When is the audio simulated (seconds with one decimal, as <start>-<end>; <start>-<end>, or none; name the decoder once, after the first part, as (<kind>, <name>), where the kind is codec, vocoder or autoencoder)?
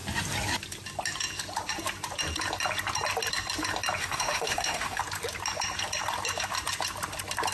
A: 4.0-5.0 (autoencoder, DAC-VAE)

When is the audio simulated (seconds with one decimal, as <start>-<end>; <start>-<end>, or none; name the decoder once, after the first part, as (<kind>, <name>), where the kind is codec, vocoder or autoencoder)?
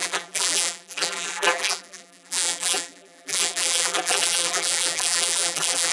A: 0.0-5.9 (vocoder, BigVGAN v2)